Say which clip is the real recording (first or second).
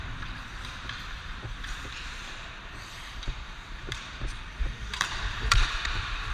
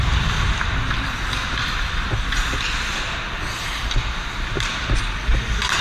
second